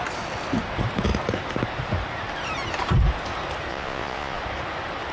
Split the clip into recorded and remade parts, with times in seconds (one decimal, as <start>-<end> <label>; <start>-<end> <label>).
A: 0.0-3.7 recorded; 3.7-4.4 remade; 4.4-5.1 recorded